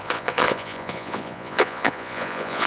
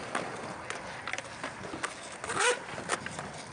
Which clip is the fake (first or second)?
first